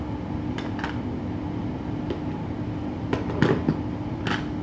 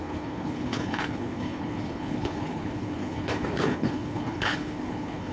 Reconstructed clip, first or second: second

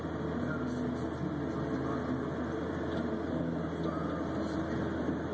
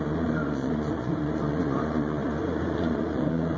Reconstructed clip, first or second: second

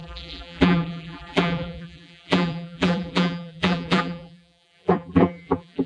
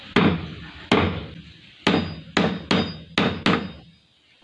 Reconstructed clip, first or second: first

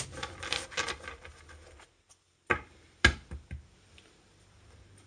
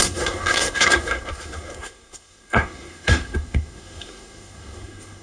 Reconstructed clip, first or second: second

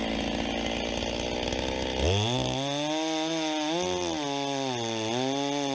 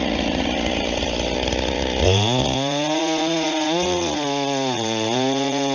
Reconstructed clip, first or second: second